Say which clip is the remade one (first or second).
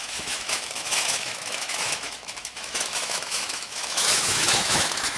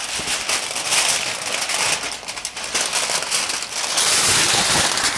first